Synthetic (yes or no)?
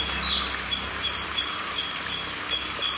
no